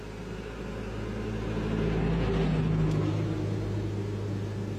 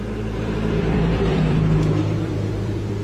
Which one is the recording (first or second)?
first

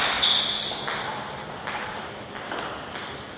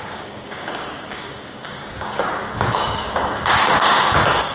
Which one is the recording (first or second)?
first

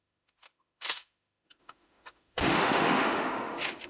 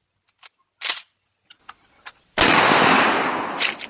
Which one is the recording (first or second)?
second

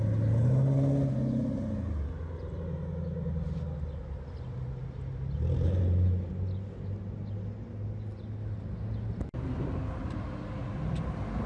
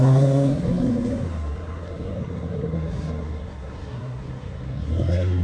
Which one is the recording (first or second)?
first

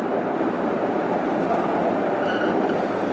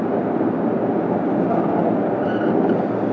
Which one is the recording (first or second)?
second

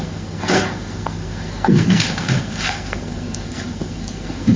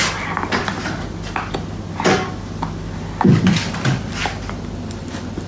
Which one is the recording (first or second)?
second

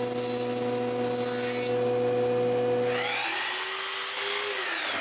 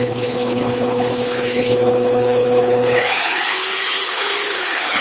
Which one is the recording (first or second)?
first